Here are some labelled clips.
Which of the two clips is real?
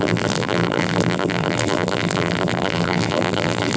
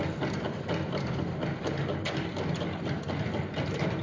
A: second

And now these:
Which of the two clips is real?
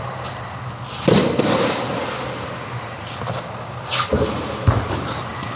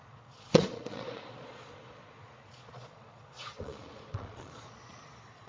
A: first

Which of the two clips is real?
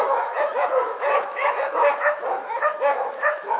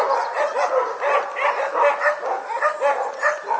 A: second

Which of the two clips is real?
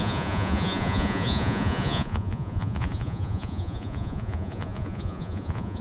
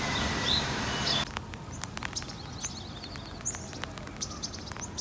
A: second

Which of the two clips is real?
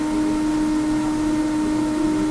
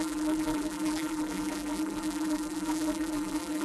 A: first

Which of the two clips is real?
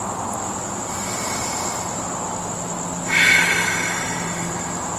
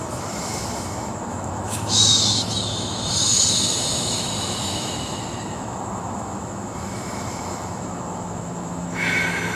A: first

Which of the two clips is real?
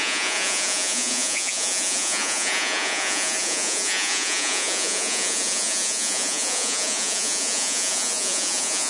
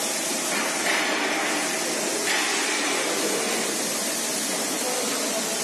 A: second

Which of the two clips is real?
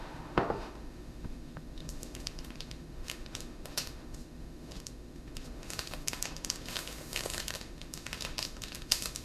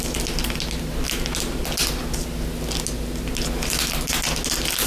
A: second